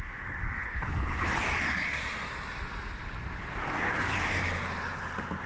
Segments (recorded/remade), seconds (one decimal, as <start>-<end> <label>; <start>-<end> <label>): 0.0-0.6 recorded; 0.6-1.3 remade; 1.3-5.5 recorded